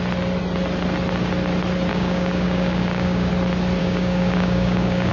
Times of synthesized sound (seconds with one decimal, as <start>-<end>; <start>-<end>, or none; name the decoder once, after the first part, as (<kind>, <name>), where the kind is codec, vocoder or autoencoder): 1.9-3.3 (codec, DAC); 3.8-5.1